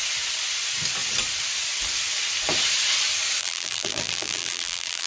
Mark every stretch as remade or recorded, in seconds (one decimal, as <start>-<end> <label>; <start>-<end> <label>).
0.0-3.4 recorded; 3.4-5.1 remade